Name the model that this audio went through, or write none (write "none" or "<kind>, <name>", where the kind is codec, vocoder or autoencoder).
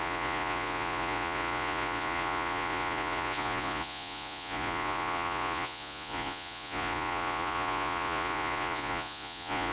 vocoder, Vocos